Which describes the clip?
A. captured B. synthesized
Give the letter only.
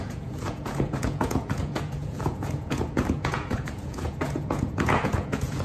B